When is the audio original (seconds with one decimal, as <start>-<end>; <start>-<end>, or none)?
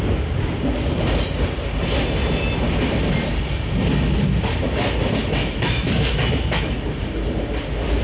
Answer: 0.0-5.4; 6.7-8.0